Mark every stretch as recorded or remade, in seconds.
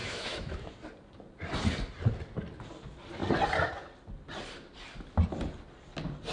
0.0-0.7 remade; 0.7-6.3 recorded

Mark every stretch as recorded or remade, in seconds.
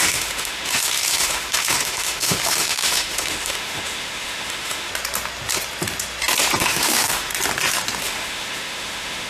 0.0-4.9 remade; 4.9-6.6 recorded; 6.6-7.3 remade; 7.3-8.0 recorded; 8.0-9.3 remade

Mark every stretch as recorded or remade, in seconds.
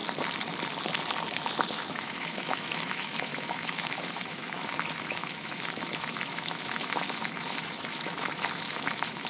0.0-1.7 recorded; 1.7-9.3 remade